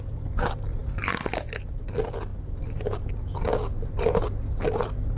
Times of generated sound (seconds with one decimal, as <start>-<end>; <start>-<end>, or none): none